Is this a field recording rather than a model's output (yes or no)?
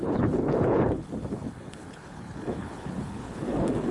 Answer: no